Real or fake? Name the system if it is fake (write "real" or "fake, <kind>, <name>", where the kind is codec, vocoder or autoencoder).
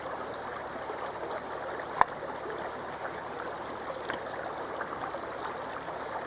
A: real